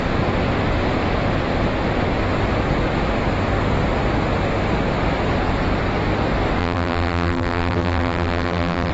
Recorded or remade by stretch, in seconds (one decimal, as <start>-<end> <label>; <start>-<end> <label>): 0.0-6.6 recorded; 6.6-8.9 remade